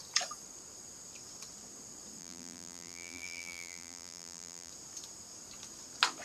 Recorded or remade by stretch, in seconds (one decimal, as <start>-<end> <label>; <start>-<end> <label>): 0.0-2.2 recorded; 2.2-4.7 remade; 4.7-6.2 recorded

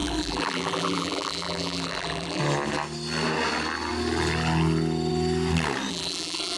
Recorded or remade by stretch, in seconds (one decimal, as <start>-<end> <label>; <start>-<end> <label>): 0.0-2.4 remade; 2.4-5.9 recorded; 5.9-6.6 remade

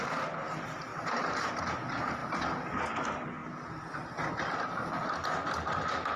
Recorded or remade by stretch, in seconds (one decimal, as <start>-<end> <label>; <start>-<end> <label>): 0.0-0.9 recorded; 0.9-1.6 remade; 1.6-6.2 recorded

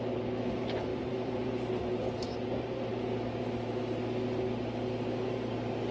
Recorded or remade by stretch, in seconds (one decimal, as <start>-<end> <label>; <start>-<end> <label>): 0.0-0.9 recorded; 0.9-1.8 remade; 1.8-5.9 recorded

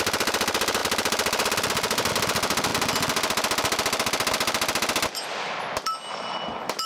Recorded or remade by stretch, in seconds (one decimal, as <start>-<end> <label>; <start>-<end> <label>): 0.0-2.7 remade; 2.7-6.9 recorded

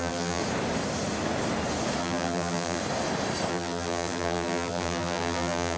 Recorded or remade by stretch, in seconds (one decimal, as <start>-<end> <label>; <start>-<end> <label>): 0.0-0.4 remade; 0.4-2.0 recorded; 2.0-2.8 remade; 2.8-3.5 recorded; 3.5-5.8 remade

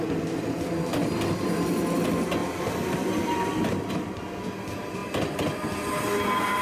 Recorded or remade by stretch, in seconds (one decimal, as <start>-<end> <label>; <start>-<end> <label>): 0.0-6.6 recorded